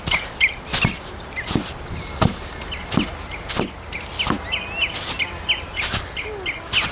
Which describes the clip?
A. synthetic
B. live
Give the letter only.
B